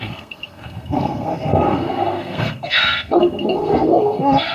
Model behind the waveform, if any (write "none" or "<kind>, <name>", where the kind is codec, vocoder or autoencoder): codec, SNAC